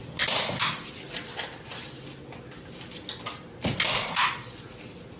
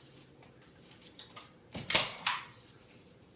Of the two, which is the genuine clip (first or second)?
first